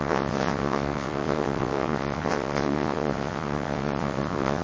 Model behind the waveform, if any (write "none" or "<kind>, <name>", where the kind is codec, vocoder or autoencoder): vocoder, WaveNeXt